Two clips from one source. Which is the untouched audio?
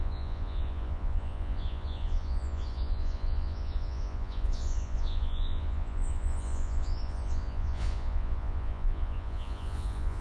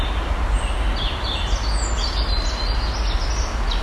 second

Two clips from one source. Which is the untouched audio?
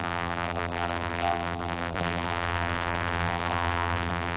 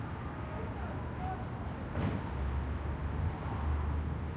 second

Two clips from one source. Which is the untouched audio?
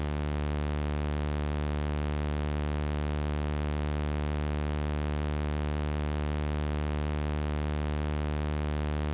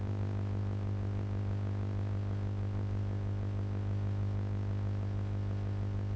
first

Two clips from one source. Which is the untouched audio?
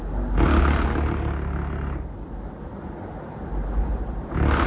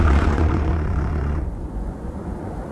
first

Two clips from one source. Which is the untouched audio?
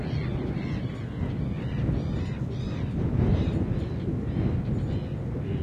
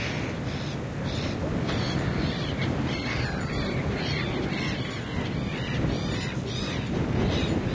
first